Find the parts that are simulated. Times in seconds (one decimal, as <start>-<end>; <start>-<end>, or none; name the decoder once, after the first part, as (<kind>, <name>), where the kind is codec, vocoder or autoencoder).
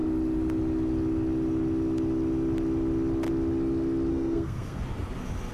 4.1-4.8 (codec, SNAC)